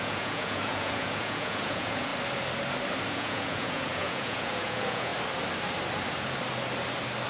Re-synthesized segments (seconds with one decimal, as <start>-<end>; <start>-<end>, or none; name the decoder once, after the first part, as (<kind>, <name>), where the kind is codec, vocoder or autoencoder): 0.0-2.1 (vocoder, Vocos); 3.1-5.1